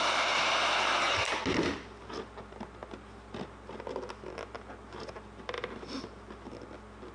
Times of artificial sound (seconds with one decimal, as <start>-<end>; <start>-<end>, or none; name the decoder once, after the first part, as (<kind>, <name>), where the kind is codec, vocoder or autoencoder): none